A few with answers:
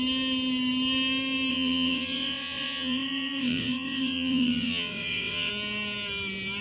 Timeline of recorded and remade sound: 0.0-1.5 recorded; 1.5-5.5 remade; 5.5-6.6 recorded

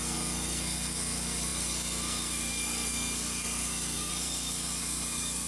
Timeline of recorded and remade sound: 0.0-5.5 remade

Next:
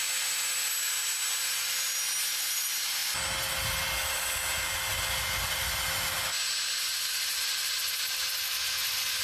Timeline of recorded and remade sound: 0.0-9.2 recorded

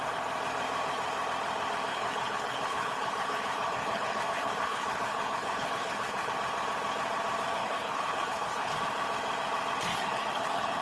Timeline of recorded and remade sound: 0.0-1.9 recorded; 1.9-6.3 remade; 6.3-7.6 recorded; 7.6-8.7 remade; 8.7-9.9 recorded; 9.9-10.8 remade

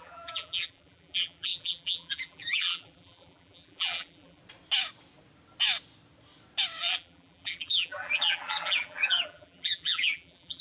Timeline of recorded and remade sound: 0.0-4.4 remade; 4.4-6.8 recorded; 6.8-10.6 remade